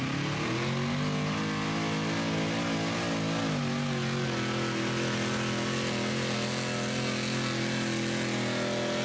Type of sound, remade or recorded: recorded